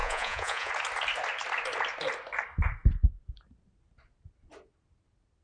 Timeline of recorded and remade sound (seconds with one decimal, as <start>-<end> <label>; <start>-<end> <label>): 0.0-0.7 remade; 0.7-5.4 recorded